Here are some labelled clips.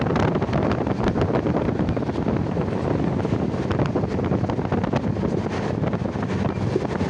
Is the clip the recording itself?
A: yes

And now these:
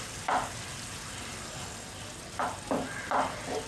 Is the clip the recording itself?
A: yes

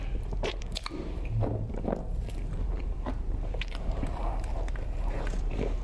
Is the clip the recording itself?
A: no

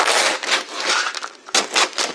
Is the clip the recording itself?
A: no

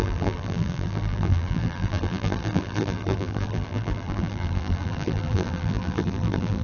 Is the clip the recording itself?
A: no